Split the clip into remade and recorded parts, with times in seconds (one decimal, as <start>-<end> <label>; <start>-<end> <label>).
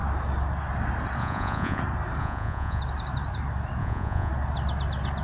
0.0-1.2 recorded; 1.2-1.8 remade; 1.8-2.2 recorded; 2.2-2.8 remade; 2.8-3.8 recorded; 3.8-4.3 remade; 4.3-5.2 recorded